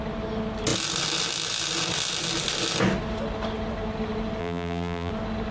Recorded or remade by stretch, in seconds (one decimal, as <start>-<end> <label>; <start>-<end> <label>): 0.0-4.4 recorded; 4.4-5.1 remade; 5.1-5.5 recorded

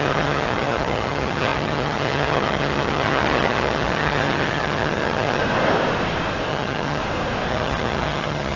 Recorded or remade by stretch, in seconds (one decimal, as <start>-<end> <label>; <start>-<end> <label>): 0.0-5.4 remade; 5.4-6.5 recorded; 6.5-7.0 remade; 7.0-7.5 recorded; 7.5-8.6 remade

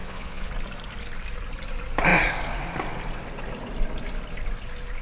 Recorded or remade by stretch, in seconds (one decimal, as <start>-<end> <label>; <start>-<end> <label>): 0.0-0.5 remade; 0.5-5.0 recorded

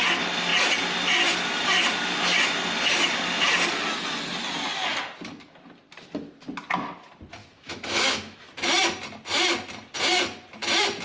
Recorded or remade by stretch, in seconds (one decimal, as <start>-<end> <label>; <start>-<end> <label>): 0.0-7.4 recorded; 7.4-8.5 remade; 8.5-11.0 recorded

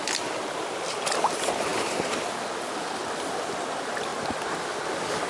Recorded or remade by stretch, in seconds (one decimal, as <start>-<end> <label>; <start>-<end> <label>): 0.0-1.7 recorded; 1.7-2.3 remade; 2.3-5.3 recorded

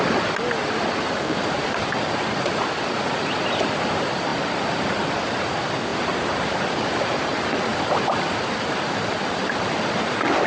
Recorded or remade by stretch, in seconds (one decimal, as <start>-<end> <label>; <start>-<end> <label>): 0.0-5.9 recorded; 5.9-6.9 remade; 6.9-7.7 recorded; 7.7-10.5 remade